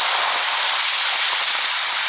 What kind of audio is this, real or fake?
real